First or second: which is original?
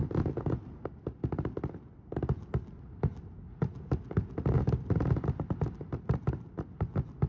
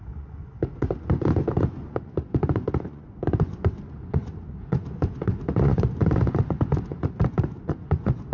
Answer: first